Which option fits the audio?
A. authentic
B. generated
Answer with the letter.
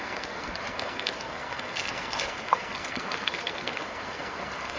B